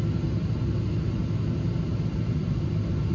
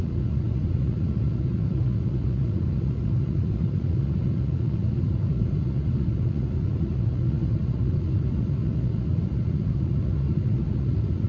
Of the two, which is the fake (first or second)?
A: second